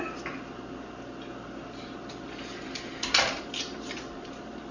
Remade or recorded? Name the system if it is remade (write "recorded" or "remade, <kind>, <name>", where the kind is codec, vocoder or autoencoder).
recorded